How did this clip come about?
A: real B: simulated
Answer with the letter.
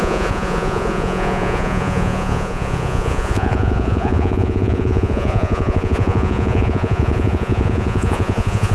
B